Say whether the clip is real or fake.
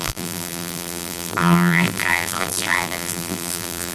fake